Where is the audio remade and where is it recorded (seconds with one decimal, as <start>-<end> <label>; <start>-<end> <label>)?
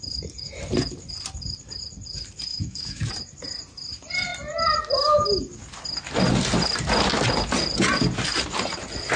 0.0-2.5 recorded; 2.5-3.1 remade; 3.1-9.2 recorded